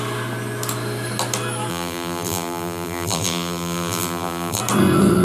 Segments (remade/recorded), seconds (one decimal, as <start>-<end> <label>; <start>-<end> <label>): 0.0-1.7 recorded; 1.7-4.6 remade; 4.6-5.2 recorded